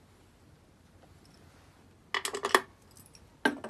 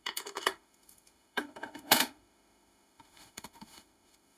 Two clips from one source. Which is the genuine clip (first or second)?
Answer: first